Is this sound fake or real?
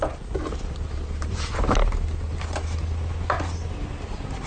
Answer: real